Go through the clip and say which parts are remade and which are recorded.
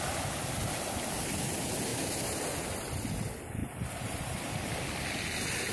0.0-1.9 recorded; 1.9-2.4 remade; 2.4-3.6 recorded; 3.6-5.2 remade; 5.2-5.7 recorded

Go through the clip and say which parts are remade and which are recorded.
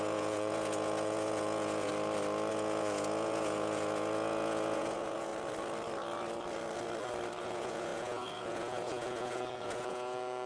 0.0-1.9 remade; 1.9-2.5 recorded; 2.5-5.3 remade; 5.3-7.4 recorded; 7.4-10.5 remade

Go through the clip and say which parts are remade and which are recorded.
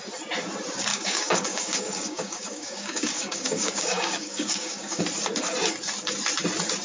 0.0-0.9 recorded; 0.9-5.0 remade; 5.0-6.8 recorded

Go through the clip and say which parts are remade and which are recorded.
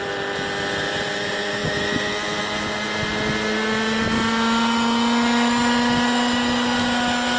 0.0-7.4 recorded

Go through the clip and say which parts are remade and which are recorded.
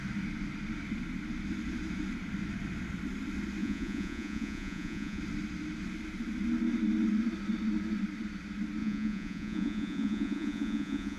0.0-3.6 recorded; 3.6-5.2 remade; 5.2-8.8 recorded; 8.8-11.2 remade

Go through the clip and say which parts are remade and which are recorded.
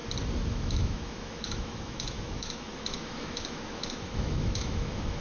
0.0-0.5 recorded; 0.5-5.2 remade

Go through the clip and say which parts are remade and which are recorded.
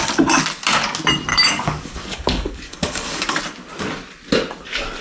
0.0-1.3 recorded; 1.3-3.4 remade; 3.4-5.0 recorded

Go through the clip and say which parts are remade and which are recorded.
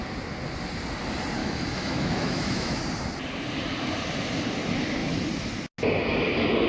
0.0-1.4 recorded; 1.4-2.8 remade; 2.8-6.7 recorded